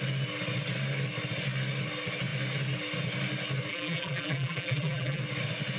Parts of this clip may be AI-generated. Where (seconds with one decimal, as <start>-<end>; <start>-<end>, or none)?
3.7-5.2